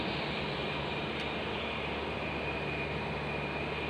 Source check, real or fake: real